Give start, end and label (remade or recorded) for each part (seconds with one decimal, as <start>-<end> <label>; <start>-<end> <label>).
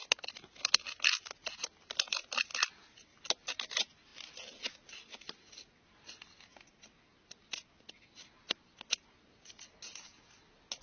0.0-10.8 recorded